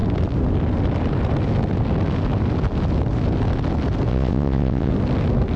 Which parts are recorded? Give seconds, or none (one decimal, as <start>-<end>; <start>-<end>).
0.0-4.1; 4.9-5.6